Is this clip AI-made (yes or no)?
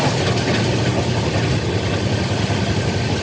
no